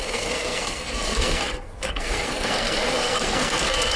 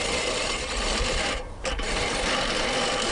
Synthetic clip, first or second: first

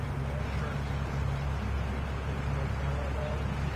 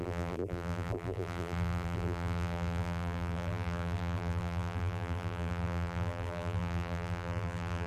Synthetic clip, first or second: second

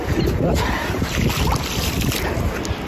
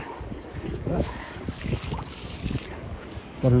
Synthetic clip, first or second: second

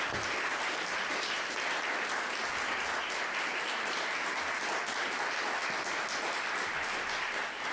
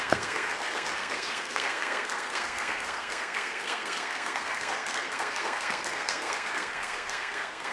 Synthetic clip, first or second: second